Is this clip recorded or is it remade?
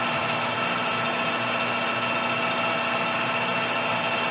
recorded